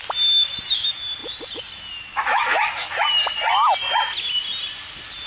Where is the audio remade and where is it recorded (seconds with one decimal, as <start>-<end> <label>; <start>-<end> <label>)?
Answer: 0.0-5.3 recorded